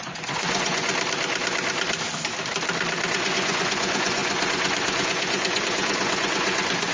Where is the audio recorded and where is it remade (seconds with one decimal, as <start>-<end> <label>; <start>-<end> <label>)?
0.0-0.9 remade; 0.9-3.1 recorded; 3.1-6.9 remade